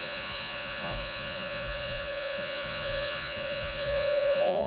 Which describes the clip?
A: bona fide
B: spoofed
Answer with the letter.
B